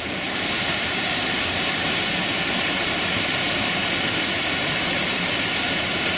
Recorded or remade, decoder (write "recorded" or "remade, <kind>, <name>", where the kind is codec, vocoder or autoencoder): remade, vocoder, BigVGAN v2